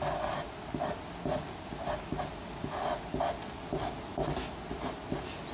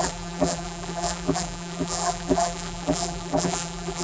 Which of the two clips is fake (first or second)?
second